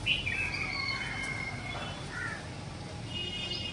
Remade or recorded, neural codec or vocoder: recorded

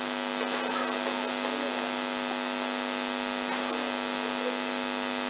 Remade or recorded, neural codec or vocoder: recorded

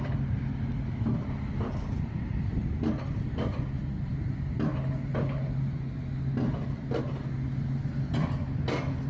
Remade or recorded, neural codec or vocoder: recorded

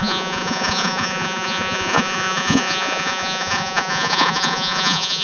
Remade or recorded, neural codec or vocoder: remade, vocoder, Vocos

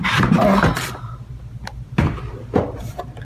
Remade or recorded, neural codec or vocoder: recorded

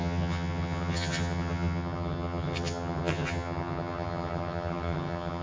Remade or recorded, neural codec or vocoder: remade, vocoder, HiFi-GAN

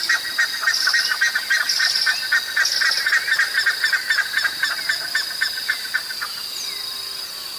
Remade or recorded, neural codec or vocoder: recorded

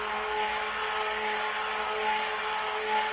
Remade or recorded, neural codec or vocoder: recorded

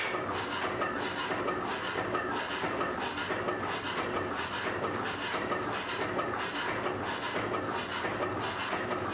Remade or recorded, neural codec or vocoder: recorded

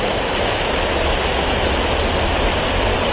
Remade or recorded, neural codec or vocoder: recorded